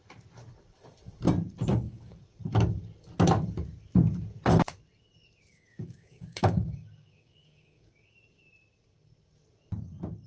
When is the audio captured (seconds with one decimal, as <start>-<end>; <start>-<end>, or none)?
0.0-1.7; 2.2-5.5; 7.9-10.3